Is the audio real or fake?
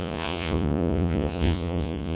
fake